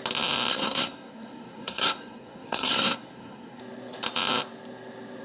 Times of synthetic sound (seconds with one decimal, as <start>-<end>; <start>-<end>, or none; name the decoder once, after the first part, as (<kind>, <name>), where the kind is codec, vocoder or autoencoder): 0.5-3.6 (codec, SNAC)